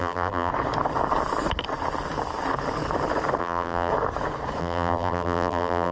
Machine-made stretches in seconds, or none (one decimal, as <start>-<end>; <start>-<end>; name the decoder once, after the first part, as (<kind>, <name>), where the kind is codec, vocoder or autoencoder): 0.0-0.5 (vocoder, BigVGAN v2); 3.4-3.9; 4.6-5.9